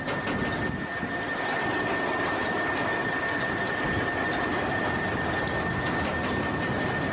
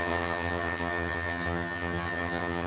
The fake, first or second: second